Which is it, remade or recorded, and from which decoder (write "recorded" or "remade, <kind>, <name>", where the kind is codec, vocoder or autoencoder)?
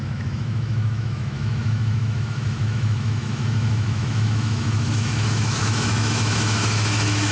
remade, autoencoder, DAC-VAE